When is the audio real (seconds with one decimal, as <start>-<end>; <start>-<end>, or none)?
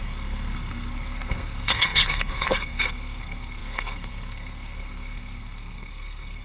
none